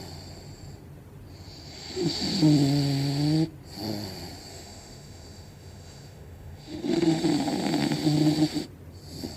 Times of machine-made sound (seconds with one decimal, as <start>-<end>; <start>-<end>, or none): 4.5-7.2